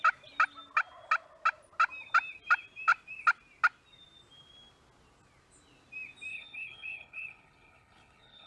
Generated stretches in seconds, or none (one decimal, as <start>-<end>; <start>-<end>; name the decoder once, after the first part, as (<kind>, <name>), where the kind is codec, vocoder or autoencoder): 6.3-8.5 (codec, HILCodec)